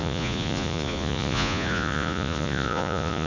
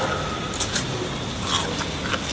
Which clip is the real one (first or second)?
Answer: second